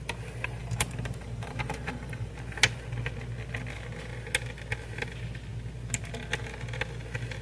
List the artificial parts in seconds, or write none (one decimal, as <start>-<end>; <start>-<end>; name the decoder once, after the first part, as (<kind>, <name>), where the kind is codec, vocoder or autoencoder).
0.6-2.3 (vocoder, BigVGAN v2)